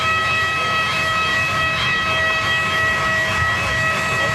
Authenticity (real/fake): fake